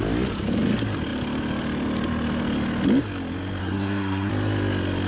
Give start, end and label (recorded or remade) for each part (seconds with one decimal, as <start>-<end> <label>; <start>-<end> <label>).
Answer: 0.0-3.6 recorded; 3.6-4.3 remade; 4.3-5.1 recorded